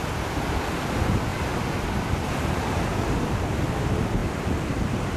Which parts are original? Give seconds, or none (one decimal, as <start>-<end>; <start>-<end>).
0.0-1.3; 3.3-4.2; 4.8-5.2